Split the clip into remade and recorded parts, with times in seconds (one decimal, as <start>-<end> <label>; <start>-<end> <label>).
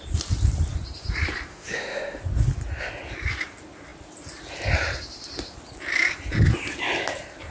0.0-1.5 recorded; 1.5-2.2 remade; 2.2-7.5 recorded